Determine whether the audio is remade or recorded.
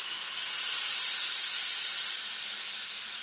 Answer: recorded